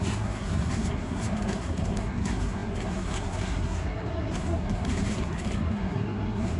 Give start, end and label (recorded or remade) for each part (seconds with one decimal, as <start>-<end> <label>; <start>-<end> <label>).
0.0-6.6 remade

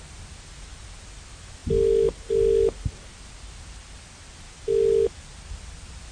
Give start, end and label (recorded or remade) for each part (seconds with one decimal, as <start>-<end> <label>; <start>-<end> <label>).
0.0-6.1 recorded

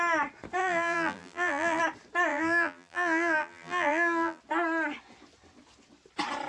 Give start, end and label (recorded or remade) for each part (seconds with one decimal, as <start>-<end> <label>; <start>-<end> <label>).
0.0-0.6 recorded; 0.6-1.8 remade; 1.8-2.3 recorded; 2.3-4.4 remade; 4.4-6.5 recorded

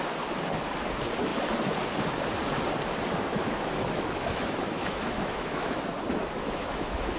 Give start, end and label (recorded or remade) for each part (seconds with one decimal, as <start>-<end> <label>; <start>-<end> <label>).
0.0-3.4 recorded; 3.4-5.8 remade; 5.8-6.2 recorded; 6.2-7.2 remade

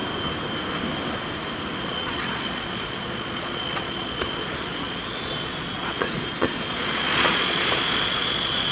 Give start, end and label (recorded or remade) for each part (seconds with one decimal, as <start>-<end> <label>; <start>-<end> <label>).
0.0-1.8 recorded; 1.8-8.7 remade

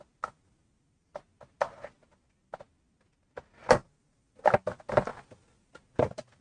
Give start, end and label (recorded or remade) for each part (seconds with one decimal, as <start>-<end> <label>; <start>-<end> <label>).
0.0-6.4 recorded

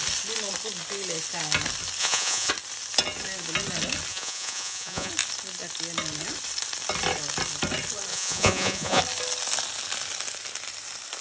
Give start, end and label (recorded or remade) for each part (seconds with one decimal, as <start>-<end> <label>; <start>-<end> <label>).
0.0-2.0 recorded; 2.0-2.5 remade; 2.5-4.1 recorded; 4.1-5.1 remade; 5.1-8.1 recorded; 8.1-9.0 remade; 9.0-11.2 recorded